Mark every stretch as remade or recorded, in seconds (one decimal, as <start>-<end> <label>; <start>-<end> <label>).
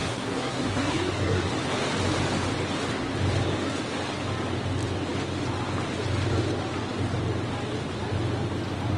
0.0-1.5 remade; 1.5-9.0 recorded